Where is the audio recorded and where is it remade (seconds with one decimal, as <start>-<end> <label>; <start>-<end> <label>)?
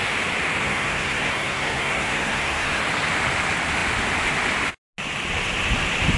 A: 0.0-0.6 recorded; 0.6-2.8 remade; 2.8-6.2 recorded